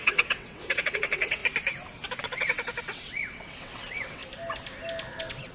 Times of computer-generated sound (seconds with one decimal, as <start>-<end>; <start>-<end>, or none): 0.0-1.4; 2.2-4.2; 5.1-5.5